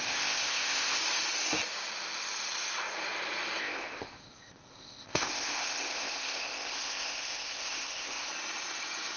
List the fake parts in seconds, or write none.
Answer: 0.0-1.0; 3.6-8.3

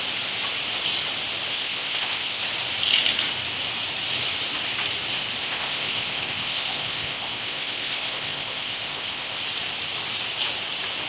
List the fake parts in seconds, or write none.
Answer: 1.5-2.4; 5.4-9.4